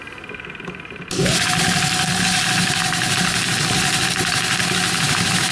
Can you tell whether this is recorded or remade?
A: recorded